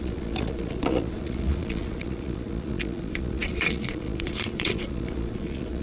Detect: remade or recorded remade